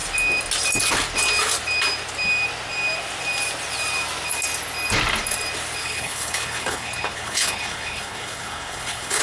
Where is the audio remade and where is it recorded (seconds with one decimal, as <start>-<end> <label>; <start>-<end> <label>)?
0.0-5.8 recorded; 5.8-9.2 remade